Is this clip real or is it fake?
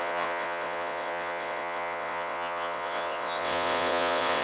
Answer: fake